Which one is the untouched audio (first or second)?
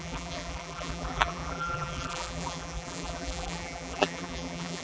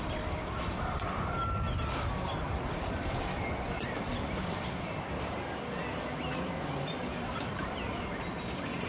second